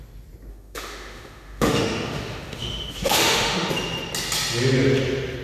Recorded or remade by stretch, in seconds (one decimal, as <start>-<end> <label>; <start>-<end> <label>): 0.0-0.5 recorded; 0.5-3.7 remade; 3.7-5.4 recorded